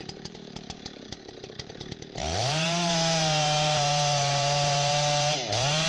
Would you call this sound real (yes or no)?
no